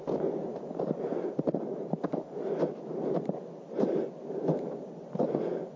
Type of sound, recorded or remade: recorded